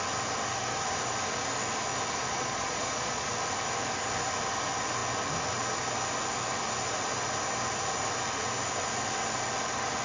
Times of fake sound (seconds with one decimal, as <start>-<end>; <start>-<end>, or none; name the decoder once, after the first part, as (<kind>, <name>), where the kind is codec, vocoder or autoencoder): 2.3-3.3 (vocoder, Vocos)